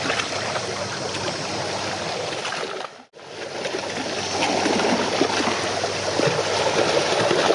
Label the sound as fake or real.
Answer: real